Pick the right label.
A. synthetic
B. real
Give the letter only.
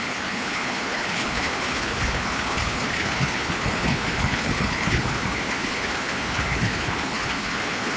A